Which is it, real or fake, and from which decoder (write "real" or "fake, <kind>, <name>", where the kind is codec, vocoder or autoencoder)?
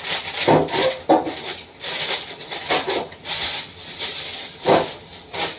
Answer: real